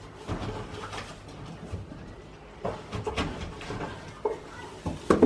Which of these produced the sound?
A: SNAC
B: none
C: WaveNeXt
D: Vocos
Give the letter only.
B